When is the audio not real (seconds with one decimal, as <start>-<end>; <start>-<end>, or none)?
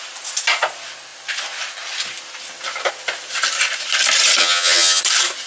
4.4-5.0